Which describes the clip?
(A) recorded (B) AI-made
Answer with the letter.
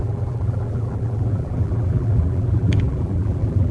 B